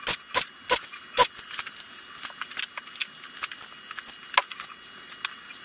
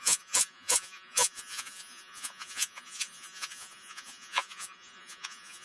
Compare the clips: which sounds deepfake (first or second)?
second